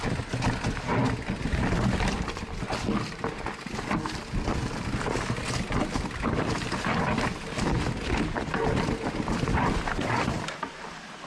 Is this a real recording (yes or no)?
yes